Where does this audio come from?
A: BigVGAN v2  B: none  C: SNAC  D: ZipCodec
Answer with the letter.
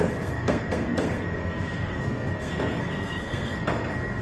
C